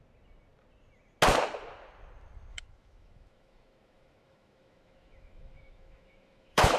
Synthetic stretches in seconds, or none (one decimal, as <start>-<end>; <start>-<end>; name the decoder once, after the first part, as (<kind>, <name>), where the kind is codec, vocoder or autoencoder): 2.5-6.8 (autoencoder, DAC-VAE)